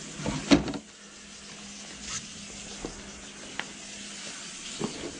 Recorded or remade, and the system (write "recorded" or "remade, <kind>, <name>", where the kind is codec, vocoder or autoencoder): recorded